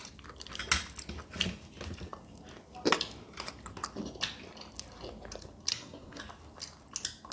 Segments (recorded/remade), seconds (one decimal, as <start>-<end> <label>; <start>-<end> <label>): 0.0-5.7 recorded; 5.7-6.2 remade; 6.2-7.3 recorded